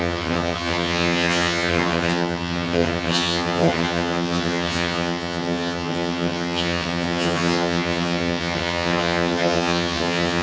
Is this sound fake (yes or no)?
yes